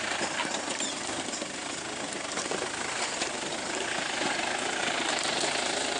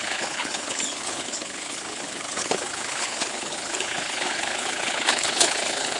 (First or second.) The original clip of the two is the first